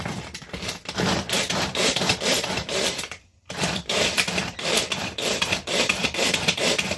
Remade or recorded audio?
remade